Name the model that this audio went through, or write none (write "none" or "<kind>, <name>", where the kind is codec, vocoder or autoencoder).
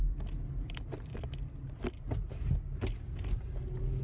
none